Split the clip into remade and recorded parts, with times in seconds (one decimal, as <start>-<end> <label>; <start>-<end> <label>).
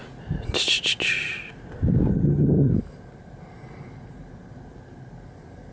0.0-2.1 recorded; 2.1-2.7 remade; 2.7-5.7 recorded